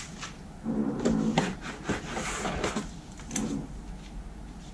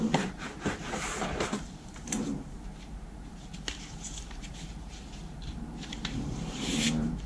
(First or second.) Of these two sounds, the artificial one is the second